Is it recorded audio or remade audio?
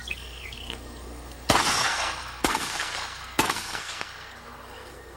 remade